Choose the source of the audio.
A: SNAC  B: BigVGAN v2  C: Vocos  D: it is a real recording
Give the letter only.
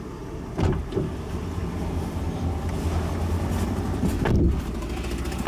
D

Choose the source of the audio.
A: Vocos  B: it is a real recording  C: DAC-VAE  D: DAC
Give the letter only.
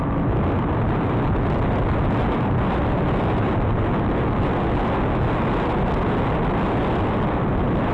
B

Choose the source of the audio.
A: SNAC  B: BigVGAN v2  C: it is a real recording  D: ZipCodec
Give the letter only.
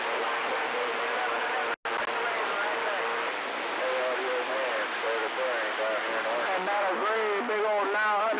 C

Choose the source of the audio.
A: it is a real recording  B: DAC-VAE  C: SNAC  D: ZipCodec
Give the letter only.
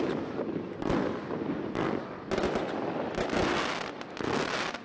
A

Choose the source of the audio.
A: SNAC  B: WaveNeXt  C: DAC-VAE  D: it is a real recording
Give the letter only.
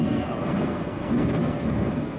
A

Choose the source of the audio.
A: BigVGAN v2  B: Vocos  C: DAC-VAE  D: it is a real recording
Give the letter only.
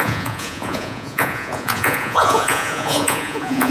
B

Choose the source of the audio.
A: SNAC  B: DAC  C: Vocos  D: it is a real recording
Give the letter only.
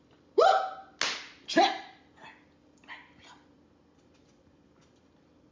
D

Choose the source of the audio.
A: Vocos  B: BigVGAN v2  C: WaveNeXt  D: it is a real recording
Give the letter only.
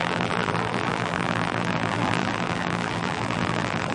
B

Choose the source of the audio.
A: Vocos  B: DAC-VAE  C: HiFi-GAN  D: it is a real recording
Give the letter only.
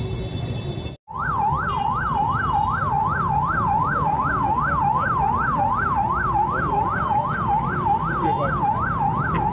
D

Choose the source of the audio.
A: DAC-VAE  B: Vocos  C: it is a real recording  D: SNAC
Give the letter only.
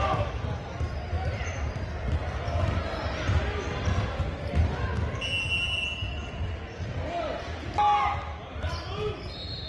C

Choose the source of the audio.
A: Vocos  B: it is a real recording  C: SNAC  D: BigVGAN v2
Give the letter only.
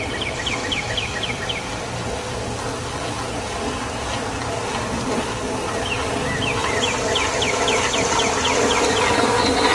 B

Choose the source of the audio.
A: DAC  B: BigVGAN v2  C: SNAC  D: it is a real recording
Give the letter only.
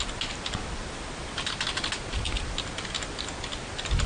D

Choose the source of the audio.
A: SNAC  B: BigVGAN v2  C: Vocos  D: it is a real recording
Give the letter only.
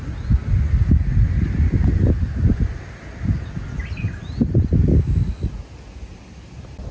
D